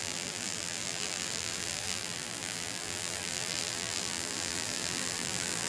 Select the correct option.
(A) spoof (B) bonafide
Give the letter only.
A